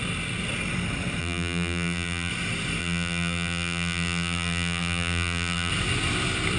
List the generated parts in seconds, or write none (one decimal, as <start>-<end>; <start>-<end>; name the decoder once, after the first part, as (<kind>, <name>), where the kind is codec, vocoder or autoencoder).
1.2-2.3 (vocoder, BigVGAN v2); 2.8-5.7